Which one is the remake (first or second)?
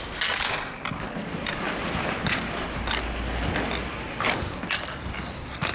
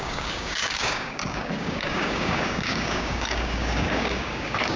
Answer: second